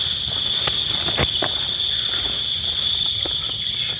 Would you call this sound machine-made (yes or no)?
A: no